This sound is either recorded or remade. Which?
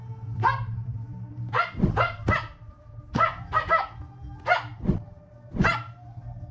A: recorded